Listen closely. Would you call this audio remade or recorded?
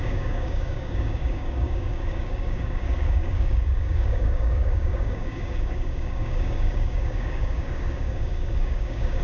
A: remade